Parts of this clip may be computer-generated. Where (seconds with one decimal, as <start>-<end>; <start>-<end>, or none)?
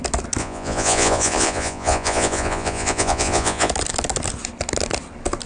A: 0.4-3.7